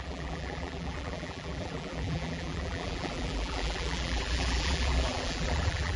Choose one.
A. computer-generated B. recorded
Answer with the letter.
A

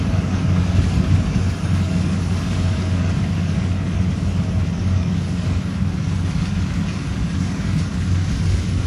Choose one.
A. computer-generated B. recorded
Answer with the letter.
A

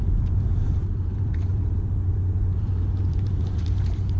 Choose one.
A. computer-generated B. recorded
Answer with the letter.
A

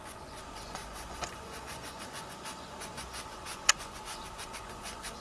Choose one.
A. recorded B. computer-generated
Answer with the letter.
B